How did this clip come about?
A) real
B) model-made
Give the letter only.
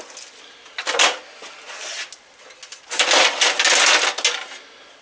A